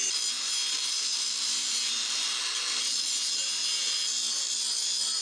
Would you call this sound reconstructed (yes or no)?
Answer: yes